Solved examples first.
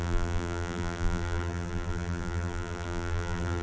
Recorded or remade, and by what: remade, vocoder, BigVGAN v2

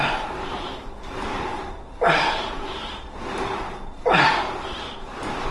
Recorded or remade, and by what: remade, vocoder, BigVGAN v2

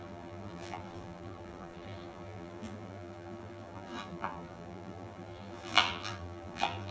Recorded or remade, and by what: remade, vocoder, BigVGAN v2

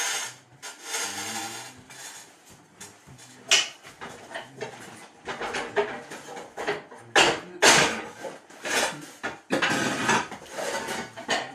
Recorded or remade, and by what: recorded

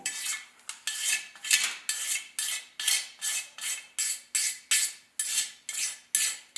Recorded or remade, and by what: recorded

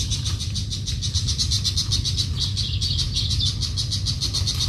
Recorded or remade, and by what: recorded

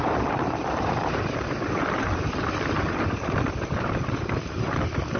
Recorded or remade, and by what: remade, vocoder, BigVGAN v2